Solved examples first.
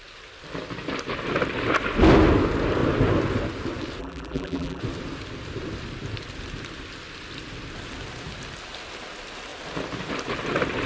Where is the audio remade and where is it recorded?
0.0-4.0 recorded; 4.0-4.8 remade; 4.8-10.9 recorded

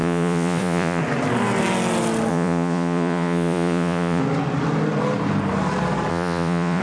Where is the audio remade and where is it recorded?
0.0-1.0 remade; 1.0-2.3 recorded; 2.3-4.2 remade; 4.2-6.1 recorded; 6.1-6.8 remade

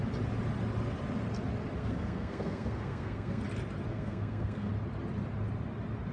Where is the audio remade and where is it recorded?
0.0-1.8 recorded; 1.8-3.4 remade; 3.4-3.9 recorded; 3.9-4.7 remade; 4.7-6.1 recorded

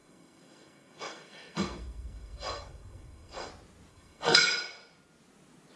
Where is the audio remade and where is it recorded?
0.0-3.5 remade; 3.5-3.9 recorded; 3.9-4.5 remade; 4.5-5.8 recorded

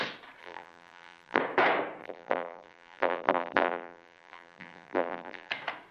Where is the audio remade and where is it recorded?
0.0-0.4 recorded; 0.4-1.4 remade; 1.4-2.0 recorded; 2.0-5.5 remade; 5.5-5.9 recorded

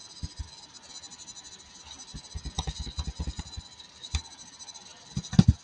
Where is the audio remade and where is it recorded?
0.0-5.6 recorded